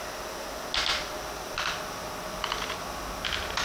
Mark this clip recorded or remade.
recorded